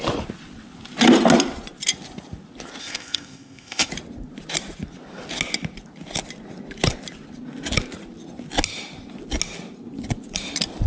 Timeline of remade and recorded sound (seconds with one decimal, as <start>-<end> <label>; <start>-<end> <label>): 0.0-2.8 recorded; 2.8-3.9 remade; 3.9-10.9 recorded